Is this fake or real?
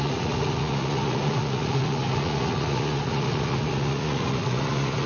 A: fake